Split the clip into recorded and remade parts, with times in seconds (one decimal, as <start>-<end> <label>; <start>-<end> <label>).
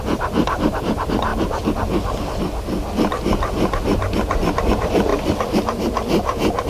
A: 0.0-1.3 remade; 1.3-4.6 recorded; 4.6-6.7 remade